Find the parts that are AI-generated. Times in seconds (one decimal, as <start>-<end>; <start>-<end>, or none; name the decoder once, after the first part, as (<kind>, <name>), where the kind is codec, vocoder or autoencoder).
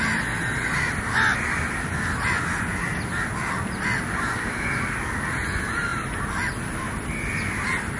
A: none